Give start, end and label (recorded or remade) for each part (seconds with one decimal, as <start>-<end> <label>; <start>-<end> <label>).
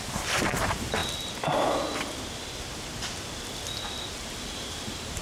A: 0.0-1.0 remade; 1.0-4.1 recorded; 4.1-5.2 remade